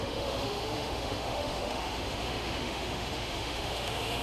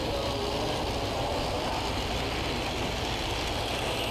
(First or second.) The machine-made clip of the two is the first